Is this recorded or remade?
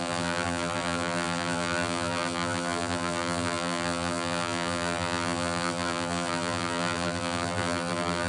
remade